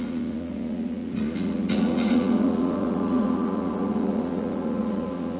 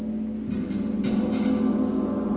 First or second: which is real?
second